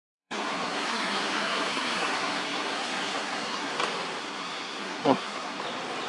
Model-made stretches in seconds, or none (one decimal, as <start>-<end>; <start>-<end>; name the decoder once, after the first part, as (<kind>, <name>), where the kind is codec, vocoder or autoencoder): 0.0-3.7 (codec, SNAC); 4.2-5.6